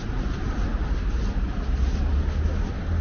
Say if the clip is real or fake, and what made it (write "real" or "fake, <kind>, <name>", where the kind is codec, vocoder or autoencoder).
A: real